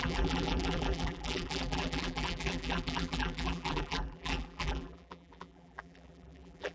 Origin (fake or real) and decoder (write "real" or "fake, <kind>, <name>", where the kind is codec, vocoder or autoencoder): fake, vocoder, BigVGAN v2